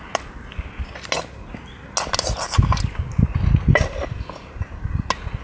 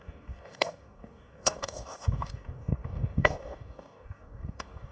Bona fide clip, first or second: first